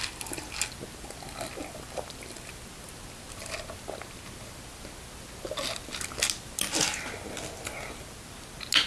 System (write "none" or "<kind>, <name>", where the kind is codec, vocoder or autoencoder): none